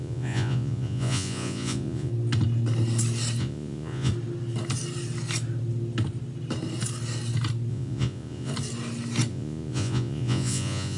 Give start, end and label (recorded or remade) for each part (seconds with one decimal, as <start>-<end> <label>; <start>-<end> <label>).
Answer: 0.0-2.1 remade; 2.1-3.4 recorded; 3.4-4.1 remade; 4.1-7.7 recorded; 7.7-8.5 remade; 8.5-9.3 recorded; 9.3-11.0 remade